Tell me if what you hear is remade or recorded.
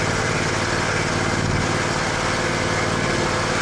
recorded